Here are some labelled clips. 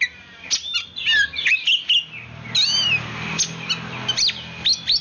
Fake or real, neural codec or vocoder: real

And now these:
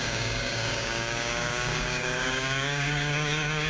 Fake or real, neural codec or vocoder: fake, codec, DAC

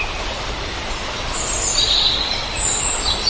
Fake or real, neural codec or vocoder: real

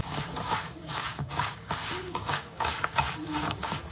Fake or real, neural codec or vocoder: fake, codec, DAC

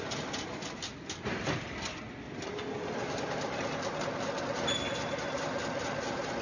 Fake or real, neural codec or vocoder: real